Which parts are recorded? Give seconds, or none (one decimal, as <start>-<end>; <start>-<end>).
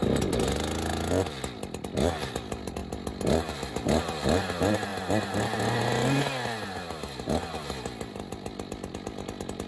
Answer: 0.0-9.7